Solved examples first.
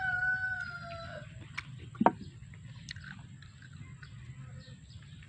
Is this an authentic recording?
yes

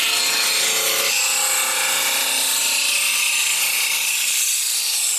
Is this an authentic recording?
yes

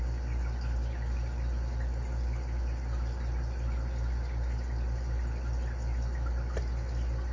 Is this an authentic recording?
yes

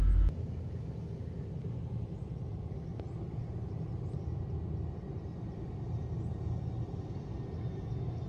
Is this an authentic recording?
yes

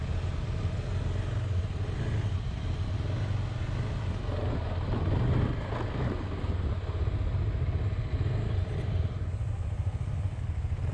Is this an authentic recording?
yes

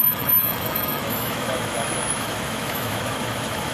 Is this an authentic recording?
no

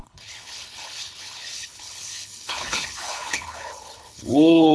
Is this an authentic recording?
no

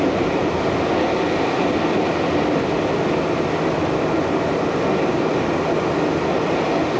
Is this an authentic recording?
yes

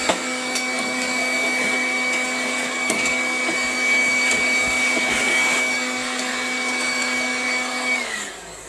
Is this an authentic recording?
no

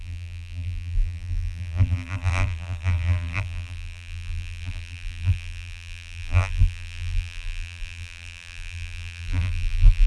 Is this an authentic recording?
no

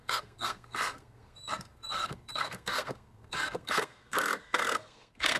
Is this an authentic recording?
no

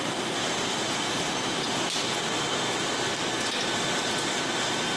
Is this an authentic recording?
yes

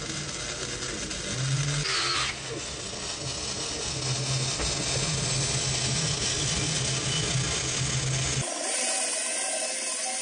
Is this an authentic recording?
yes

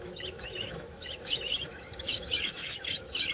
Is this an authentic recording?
no